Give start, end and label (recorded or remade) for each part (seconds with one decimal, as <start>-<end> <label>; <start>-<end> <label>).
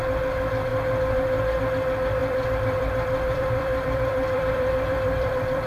0.0-2.2 recorded; 2.2-5.7 remade